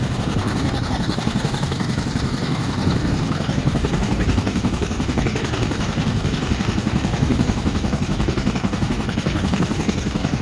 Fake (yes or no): yes